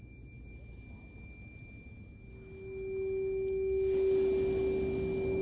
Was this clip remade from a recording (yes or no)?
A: no